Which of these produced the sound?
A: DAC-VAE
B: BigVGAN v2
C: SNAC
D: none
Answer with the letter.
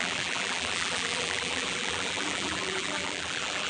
B